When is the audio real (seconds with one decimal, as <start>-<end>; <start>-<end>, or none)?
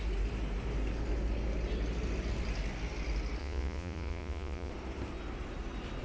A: 0.0-3.4; 4.7-6.0